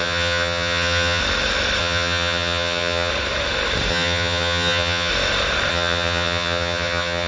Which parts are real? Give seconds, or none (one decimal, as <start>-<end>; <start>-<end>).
1.2-1.8; 3.1-3.9; 5.1-5.7

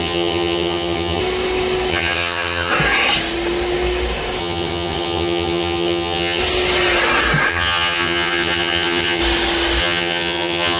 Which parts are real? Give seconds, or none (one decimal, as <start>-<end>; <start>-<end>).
1.2-1.9; 2.7-4.4; 6.4-7.5; 9.2-9.8

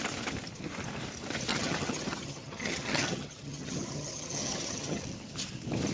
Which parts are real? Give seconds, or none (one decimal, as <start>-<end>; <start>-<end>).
0.0-1.5; 5.0-5.9

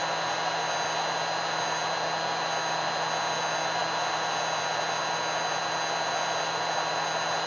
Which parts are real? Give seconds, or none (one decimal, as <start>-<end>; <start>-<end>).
0.0-7.5

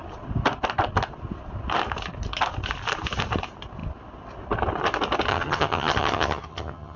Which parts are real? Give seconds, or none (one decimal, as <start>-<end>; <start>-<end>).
0.0-5.3

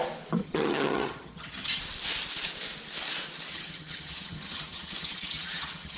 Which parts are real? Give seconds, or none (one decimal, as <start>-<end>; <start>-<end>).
0.0-0.4; 1.8-3.5